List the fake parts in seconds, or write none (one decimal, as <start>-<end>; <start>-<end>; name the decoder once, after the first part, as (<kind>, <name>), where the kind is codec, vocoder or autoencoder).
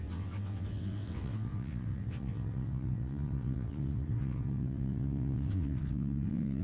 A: 0.0-6.6 (vocoder, WaveNeXt)